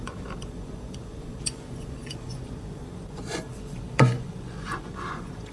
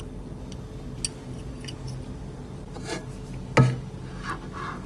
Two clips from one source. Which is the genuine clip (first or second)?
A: second